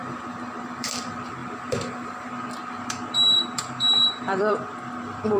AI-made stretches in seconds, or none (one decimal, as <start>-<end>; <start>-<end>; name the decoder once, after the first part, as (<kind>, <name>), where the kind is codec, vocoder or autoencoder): 0.0-5.4 (vocoder, BigVGAN v2)